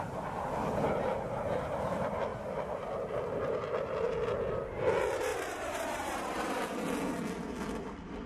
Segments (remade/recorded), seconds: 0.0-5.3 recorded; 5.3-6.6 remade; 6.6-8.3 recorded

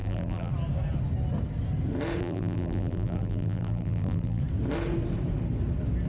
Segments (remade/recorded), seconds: 0.0-0.5 remade; 0.5-2.2 recorded; 2.2-4.4 remade; 4.4-6.1 recorded

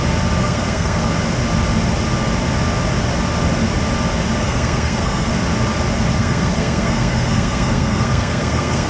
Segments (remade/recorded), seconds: 0.0-0.4 recorded; 0.4-1.1 remade; 1.1-4.4 recorded; 4.4-5.3 remade; 5.3-6.2 recorded; 6.2-8.9 remade